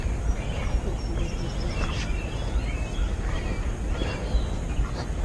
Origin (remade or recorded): recorded